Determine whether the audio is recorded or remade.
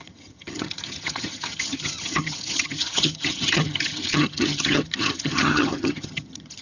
remade